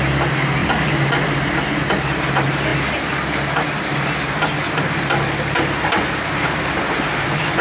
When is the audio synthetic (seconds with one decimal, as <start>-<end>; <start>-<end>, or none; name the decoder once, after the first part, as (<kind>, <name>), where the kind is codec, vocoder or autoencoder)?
none